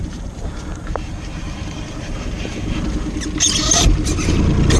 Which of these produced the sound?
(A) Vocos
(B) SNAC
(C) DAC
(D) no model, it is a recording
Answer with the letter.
D